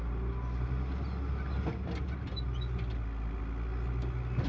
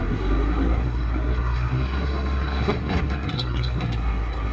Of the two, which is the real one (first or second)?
first